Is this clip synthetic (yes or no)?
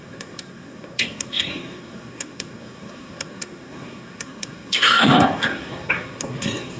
yes